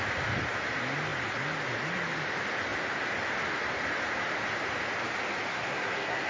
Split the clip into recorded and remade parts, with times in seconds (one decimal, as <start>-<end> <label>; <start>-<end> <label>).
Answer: 0.0-5.5 recorded; 5.5-6.3 remade

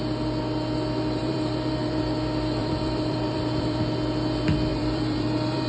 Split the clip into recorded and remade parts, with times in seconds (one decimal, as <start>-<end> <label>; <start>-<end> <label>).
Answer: 0.0-1.2 recorded; 1.2-2.0 remade; 2.0-2.6 recorded; 2.6-3.8 remade; 3.8-4.7 recorded; 4.7-5.7 remade

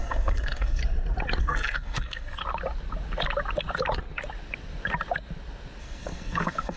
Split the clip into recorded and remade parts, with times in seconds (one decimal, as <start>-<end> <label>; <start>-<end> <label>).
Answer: 0.0-0.8 remade; 0.8-1.4 recorded; 1.4-2.4 remade; 2.4-5.8 recorded; 5.8-6.8 remade

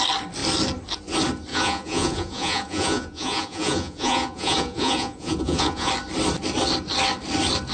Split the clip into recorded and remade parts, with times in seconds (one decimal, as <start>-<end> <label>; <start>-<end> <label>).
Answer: 0.0-1.5 recorded; 1.5-5.9 remade; 5.9-7.7 recorded

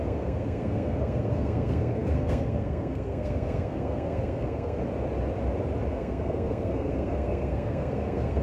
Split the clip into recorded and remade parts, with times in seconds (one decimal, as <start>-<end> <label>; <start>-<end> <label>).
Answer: 0.0-4.8 remade; 4.8-5.9 recorded; 5.9-8.4 remade

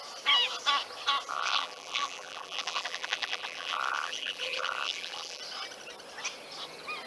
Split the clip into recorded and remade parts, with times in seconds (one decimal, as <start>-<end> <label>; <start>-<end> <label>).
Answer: 0.0-1.3 recorded; 1.3-5.4 remade; 5.4-7.1 recorded

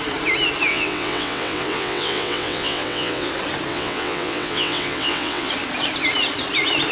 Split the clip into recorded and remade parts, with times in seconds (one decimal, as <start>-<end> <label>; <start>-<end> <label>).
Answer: 0.0-0.7 recorded; 0.7-3.3 remade; 3.3-3.7 recorded; 3.7-5.5 remade; 5.5-6.9 recorded

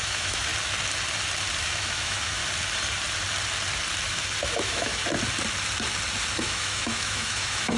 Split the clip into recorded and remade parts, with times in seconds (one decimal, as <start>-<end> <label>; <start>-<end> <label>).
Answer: 0.0-0.5 remade; 0.5-1.6 recorded; 1.6-2.4 remade; 2.4-4.4 recorded; 4.4-4.9 remade; 4.9-6.3 recorded; 6.3-7.8 remade